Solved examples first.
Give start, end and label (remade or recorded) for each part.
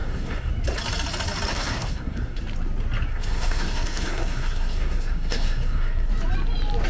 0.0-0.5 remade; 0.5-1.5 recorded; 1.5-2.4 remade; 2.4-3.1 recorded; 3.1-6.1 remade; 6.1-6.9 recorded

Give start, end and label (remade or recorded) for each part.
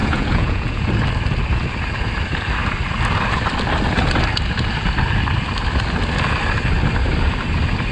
0.0-0.8 remade; 0.8-7.9 recorded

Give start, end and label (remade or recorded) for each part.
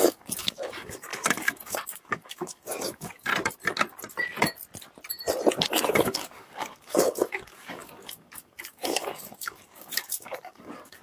0.0-3.3 remade; 3.3-5.9 recorded; 5.9-11.0 remade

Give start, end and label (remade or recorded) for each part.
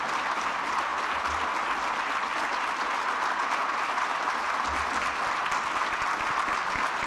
0.0-7.1 recorded